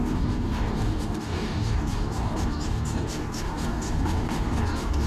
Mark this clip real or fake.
fake